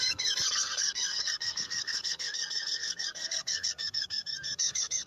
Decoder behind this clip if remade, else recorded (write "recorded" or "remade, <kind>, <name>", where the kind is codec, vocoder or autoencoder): remade, codec, SNAC